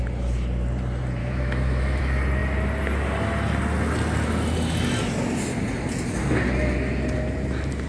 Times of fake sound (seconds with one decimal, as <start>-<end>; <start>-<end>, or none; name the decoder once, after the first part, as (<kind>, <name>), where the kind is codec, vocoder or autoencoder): 1.2-2.0 (autoencoder, DAC-VAE)